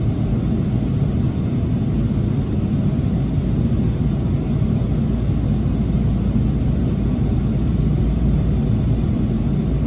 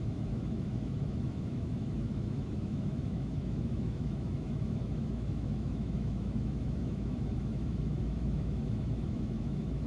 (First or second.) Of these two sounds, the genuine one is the first